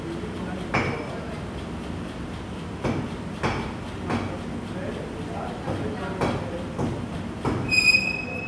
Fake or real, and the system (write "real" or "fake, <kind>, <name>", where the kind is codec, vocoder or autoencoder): real